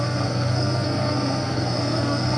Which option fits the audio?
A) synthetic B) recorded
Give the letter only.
A